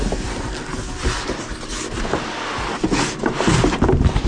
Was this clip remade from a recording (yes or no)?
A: no